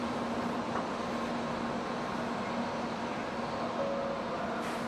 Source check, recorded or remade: recorded